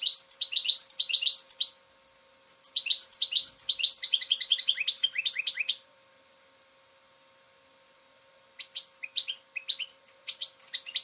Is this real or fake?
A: real